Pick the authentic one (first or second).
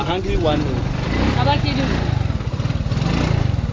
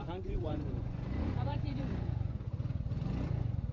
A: first